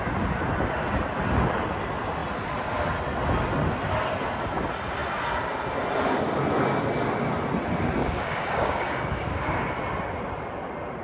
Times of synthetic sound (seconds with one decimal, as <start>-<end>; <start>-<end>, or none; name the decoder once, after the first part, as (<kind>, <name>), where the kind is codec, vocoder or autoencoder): 8.0-9.7 (codec, DAC)